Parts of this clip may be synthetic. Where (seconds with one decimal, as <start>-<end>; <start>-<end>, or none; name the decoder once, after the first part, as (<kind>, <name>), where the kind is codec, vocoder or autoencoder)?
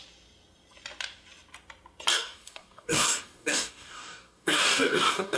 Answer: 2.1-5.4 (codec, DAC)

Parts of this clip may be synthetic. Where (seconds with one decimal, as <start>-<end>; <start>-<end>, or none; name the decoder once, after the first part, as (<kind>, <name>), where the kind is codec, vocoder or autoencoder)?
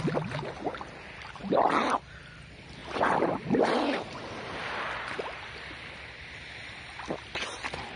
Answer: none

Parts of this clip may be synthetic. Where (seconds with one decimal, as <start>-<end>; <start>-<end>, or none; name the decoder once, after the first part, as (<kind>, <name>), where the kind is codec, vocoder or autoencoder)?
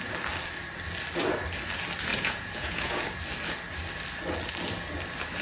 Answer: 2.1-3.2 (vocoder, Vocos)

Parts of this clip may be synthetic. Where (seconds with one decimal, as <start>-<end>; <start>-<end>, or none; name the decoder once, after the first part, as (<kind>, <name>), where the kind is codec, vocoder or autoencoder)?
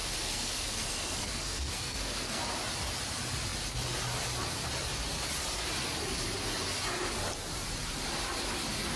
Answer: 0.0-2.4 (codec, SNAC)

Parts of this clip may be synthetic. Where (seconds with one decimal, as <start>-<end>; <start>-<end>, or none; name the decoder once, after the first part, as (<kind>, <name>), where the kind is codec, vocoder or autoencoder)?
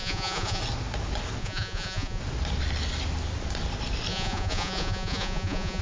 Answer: 0.0-0.6 (vocoder, Vocos); 1.4-2.2; 4.1-5.8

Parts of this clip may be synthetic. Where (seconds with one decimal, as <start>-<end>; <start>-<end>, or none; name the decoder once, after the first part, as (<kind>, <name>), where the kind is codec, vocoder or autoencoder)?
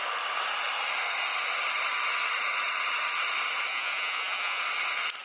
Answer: 3.7-4.6 (vocoder, Vocos)